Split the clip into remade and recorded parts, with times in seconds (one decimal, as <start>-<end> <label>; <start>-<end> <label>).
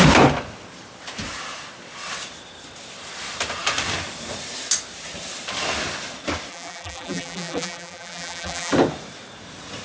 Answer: 0.0-6.5 recorded; 6.5-8.7 remade; 8.7-9.8 recorded